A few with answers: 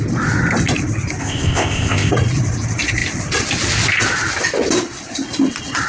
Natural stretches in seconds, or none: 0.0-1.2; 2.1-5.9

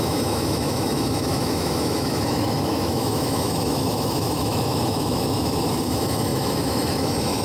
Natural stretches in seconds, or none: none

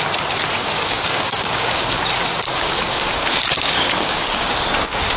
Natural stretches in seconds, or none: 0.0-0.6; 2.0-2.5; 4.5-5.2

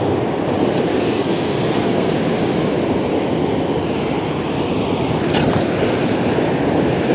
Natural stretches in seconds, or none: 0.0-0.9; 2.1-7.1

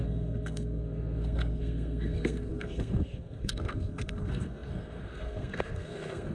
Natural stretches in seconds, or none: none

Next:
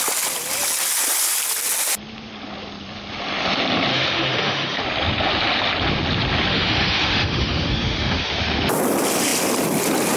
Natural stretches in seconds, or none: 0.0-3.9; 4.8-6.5; 8.3-10.2